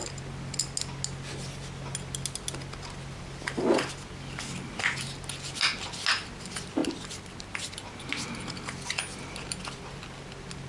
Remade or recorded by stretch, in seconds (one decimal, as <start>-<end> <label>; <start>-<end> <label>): 0.0-6.8 recorded; 6.8-7.7 remade; 7.7-10.7 recorded